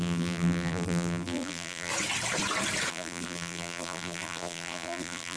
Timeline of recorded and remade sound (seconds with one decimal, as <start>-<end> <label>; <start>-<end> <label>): 0.0-1.9 remade; 1.9-2.9 recorded; 2.9-5.4 remade